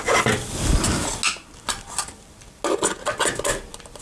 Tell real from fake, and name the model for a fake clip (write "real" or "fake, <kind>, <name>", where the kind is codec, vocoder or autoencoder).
real